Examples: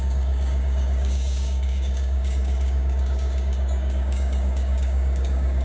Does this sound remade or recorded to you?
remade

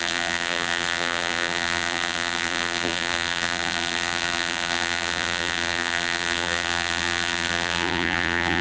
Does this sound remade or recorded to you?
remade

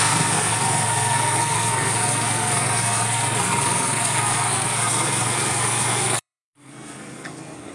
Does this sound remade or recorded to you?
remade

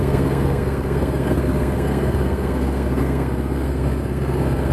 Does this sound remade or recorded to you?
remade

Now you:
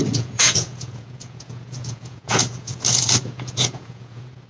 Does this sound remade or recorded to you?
remade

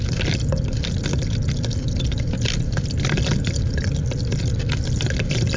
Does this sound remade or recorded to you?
recorded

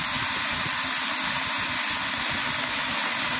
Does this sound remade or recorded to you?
recorded